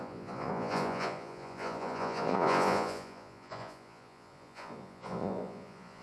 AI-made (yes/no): yes